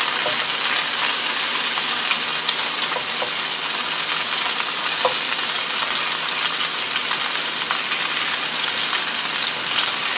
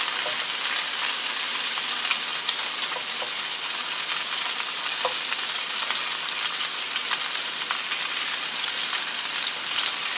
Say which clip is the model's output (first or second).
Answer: second